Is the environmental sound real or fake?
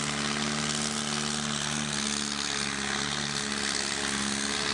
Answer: real